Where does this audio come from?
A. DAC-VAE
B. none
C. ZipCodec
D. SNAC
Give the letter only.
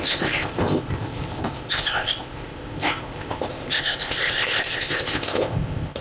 C